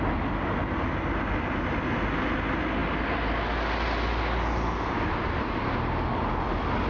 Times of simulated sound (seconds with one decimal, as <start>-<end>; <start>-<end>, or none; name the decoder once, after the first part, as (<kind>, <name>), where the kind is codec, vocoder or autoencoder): none